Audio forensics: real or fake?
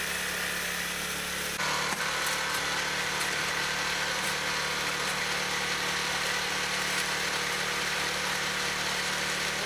real